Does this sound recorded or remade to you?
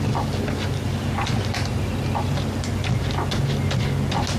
recorded